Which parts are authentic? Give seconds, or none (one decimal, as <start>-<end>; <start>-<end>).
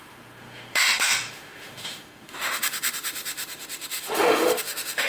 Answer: none